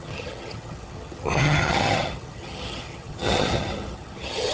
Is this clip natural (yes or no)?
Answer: no